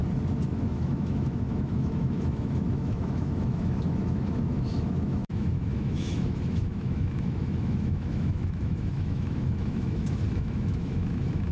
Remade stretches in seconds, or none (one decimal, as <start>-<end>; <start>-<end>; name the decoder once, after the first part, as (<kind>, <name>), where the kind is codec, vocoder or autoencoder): 0.5-11.5 (autoencoder, DAC-VAE)